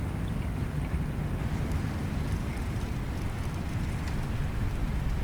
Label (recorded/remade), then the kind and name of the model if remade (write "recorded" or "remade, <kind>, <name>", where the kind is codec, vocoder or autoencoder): recorded